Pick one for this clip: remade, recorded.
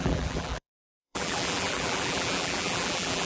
remade